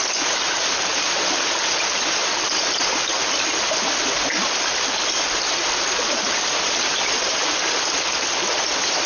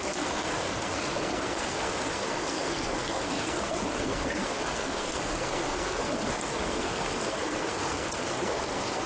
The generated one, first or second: second